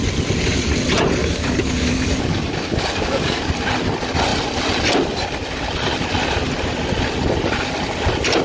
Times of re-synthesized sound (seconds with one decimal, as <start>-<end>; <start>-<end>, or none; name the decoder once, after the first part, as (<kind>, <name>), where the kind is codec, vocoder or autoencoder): 1.2-3.5 (codec, DAC)